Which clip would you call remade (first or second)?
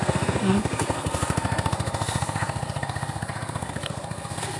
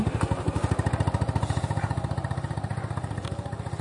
first